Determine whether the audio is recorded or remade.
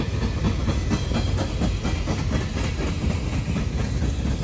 recorded